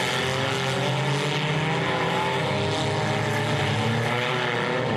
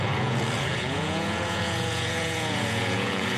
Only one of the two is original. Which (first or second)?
first